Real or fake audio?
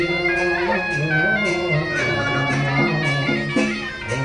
real